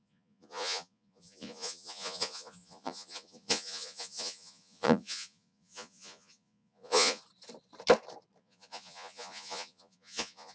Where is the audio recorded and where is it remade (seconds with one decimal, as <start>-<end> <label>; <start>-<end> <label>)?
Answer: 0.0-7.2 remade; 7.2-8.4 recorded; 8.4-10.5 remade